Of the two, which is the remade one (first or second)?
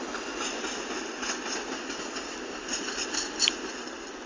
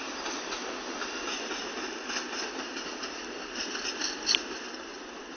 second